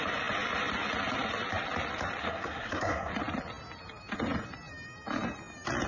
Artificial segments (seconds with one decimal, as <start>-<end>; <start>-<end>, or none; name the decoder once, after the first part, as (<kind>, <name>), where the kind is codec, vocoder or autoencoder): 2.2-3.1 (codec, SNAC)